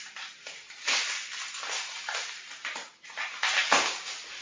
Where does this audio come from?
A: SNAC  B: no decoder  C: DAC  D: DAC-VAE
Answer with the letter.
B